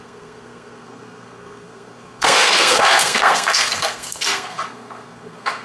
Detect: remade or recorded remade